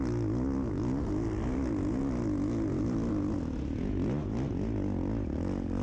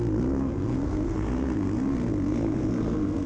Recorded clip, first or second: first